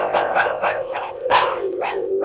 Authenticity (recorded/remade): remade